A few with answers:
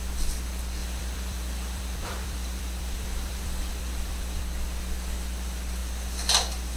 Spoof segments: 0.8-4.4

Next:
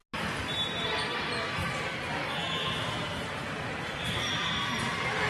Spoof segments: none

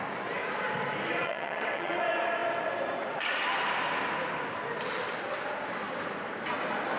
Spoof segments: 1.2-2.0

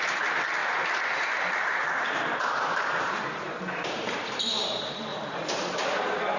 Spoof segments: 0.6-4.4; 5.1-6.0

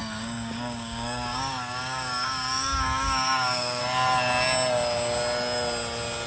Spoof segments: 0.0-3.8

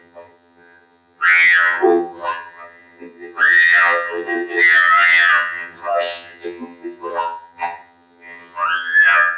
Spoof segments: 0.0-9.4